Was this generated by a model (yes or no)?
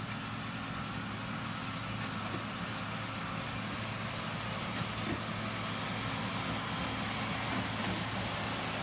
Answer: no